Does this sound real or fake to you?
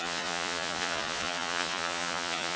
fake